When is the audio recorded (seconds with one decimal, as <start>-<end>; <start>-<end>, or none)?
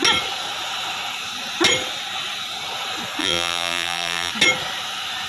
0.0-3.2; 4.3-5.3